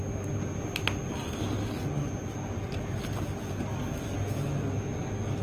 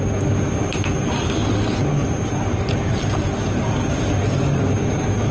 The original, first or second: first